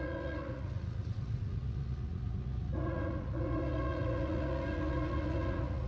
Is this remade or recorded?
remade